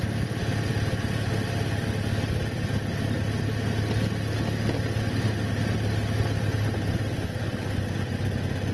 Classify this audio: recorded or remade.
recorded